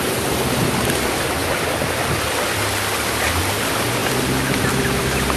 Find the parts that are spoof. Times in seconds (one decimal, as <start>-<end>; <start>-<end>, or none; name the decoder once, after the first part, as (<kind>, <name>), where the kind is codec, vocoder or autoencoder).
none